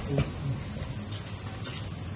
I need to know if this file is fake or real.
real